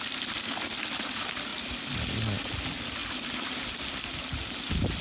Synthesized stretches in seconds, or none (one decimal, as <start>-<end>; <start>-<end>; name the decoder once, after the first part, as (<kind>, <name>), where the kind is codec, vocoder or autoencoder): none